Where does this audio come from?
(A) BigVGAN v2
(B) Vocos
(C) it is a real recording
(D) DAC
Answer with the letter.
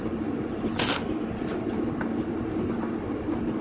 C